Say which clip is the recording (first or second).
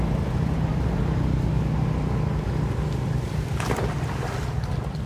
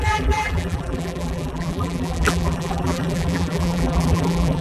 first